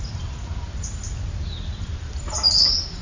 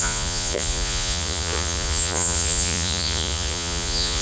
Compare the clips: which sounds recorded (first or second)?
first